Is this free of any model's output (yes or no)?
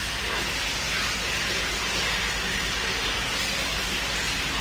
yes